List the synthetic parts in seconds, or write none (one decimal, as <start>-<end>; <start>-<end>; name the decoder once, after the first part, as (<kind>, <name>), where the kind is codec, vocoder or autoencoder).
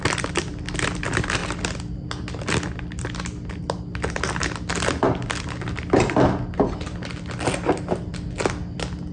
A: none